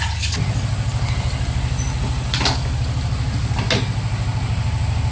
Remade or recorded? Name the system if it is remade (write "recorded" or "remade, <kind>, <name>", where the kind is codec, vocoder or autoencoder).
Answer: recorded